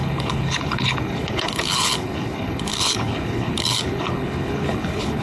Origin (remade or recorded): remade